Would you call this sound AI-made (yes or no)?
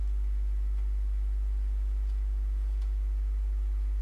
no